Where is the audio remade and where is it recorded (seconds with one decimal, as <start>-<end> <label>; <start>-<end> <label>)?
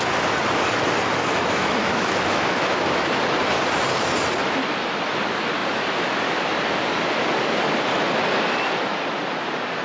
0.0-1.2 recorded; 1.2-3.2 remade; 3.2-9.8 recorded